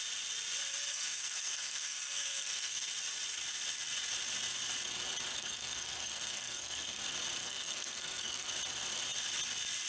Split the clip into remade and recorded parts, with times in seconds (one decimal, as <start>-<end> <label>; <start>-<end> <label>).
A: 0.0-0.9 recorded; 0.9-2.9 remade; 2.9-5.4 recorded; 5.4-7.0 remade; 7.0-7.4 recorded; 7.4-8.5 remade; 8.5-9.9 recorded